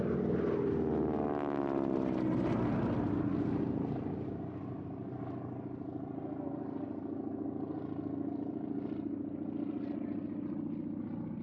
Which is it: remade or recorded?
recorded